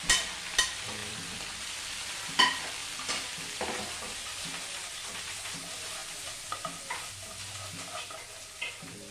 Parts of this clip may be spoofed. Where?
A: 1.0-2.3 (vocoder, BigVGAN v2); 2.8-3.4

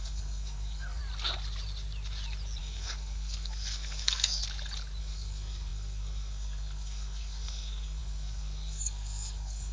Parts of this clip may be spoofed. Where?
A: 0.0-1.0 (codec, SNAC); 2.6-4.4; 5.0-9.7

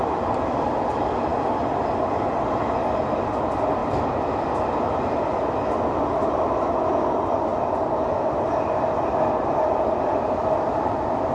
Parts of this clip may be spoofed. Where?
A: none

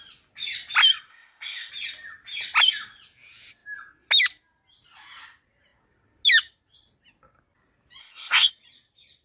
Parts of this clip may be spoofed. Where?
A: 1.1-1.7 (codec, ZipCodec); 8.0-8.5

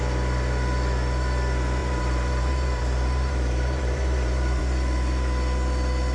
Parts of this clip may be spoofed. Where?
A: 1.8-4.6 (vocoder, BigVGAN v2)

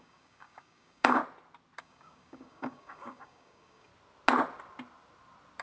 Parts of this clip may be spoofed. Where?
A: 0.0-1.2 (codec, DAC); 1.8-3.9

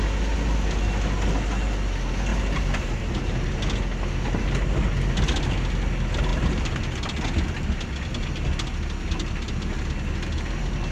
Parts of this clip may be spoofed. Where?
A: 2.3-3.6 (vocoder, BigVGAN v2); 6.3-6.8